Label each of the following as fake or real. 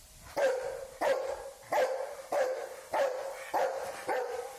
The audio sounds fake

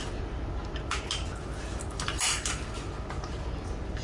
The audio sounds real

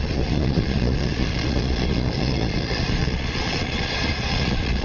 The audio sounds fake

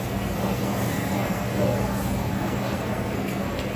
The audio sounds fake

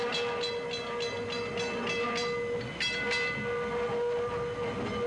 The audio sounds real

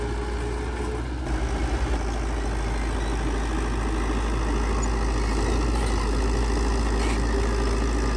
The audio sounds real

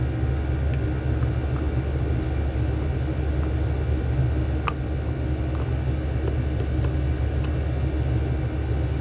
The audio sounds real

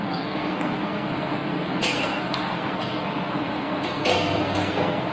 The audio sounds fake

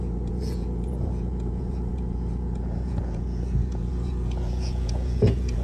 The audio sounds fake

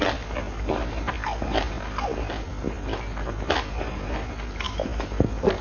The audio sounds real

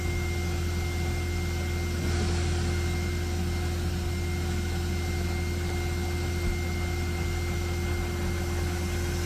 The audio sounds real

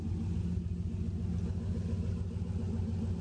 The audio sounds real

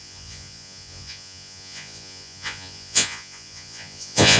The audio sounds fake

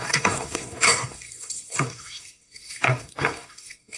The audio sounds fake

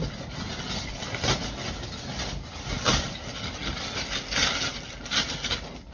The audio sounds real